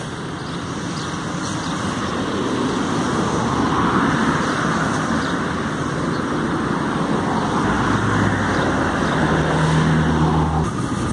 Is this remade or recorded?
recorded